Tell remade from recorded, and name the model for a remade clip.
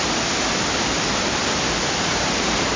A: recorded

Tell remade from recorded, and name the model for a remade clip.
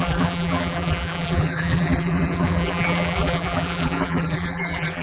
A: remade, vocoder, BigVGAN v2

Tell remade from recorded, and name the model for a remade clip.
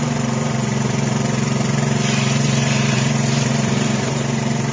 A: remade, vocoder, BigVGAN v2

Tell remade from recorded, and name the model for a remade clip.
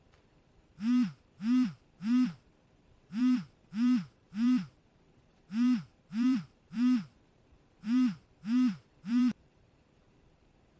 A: remade, vocoder, BigVGAN v2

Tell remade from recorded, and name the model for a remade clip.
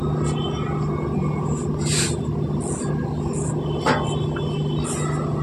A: recorded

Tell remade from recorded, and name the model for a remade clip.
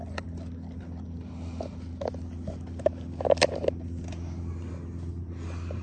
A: recorded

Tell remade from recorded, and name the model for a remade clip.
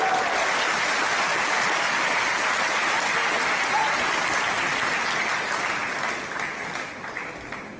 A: recorded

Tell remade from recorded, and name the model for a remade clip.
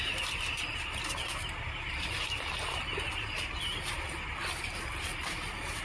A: remade, vocoder, BigVGAN v2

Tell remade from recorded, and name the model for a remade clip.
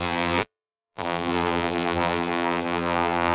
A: remade, vocoder, BigVGAN v2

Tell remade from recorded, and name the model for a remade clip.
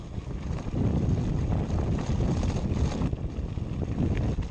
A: recorded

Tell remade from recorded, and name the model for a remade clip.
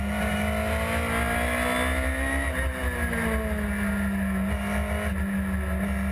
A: recorded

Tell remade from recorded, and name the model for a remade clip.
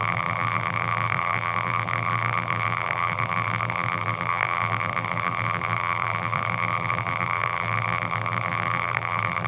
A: remade, vocoder, BigVGAN v2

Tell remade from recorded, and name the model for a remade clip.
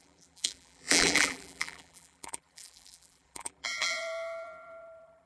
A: remade, vocoder, BigVGAN v2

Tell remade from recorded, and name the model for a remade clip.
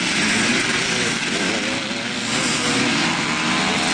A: recorded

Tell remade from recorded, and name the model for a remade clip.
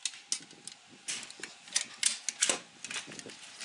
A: recorded